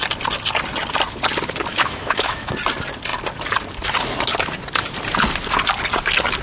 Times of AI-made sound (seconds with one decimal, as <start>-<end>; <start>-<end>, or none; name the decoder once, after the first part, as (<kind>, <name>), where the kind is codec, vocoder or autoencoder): 1.7-2.5 (autoencoder, DAC-VAE)